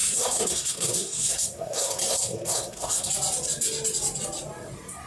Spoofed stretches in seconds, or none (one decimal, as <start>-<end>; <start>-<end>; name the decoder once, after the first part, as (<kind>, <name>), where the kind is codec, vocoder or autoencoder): 0.0-3.1 (codec, SNAC)